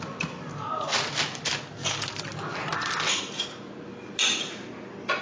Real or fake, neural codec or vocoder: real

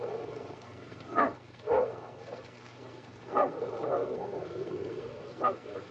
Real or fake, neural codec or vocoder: fake, codec, SNAC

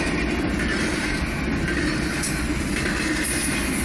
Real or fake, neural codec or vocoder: real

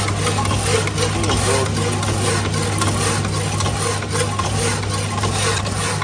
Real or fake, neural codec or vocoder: real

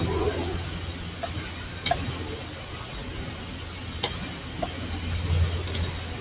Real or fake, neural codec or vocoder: real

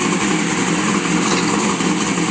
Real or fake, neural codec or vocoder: real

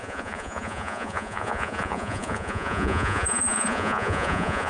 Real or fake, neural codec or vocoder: fake, vocoder, Vocos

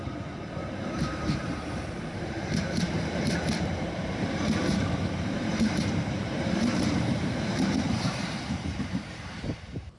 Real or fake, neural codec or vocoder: fake, vocoder, BigVGAN v2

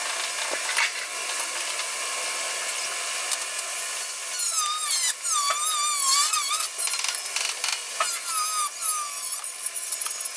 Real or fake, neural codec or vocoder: real